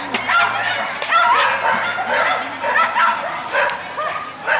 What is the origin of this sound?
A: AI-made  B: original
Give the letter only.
B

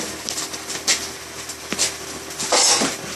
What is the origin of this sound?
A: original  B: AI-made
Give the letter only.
A